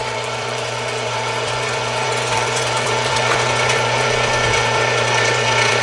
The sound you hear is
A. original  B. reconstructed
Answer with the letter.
B